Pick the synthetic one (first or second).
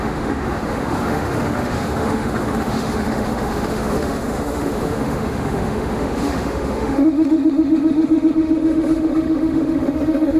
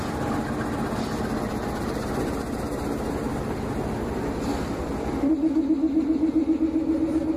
first